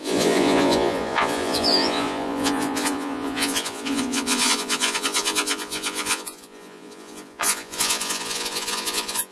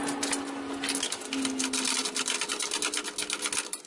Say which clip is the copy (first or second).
first